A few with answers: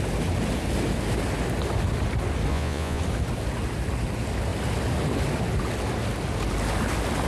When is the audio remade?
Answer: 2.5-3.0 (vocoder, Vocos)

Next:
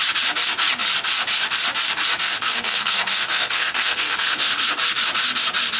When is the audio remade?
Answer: 2.2-4.7 (codec, SNAC)

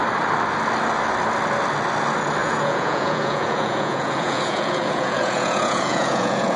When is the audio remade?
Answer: 2.4-6.6 (vocoder, Vocos)

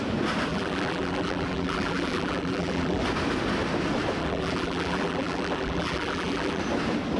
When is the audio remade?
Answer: 0.5-3.0 (vocoder, BigVGAN v2); 4.2-6.6

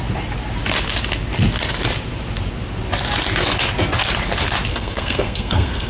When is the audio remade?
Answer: 4.7-5.9 (codec, SNAC)

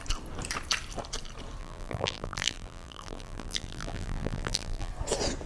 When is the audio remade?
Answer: 1.6-4.9 (vocoder, BigVGAN v2)